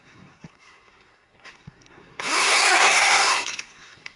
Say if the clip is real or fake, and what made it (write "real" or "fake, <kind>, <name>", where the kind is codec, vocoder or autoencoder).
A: fake, codec, SNAC